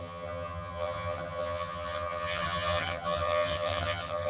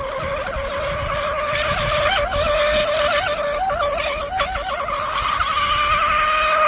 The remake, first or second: first